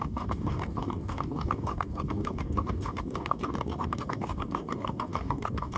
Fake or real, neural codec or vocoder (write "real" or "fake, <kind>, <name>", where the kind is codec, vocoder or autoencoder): fake, codec, DAC